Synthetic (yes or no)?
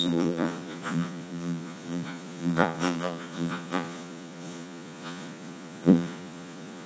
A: yes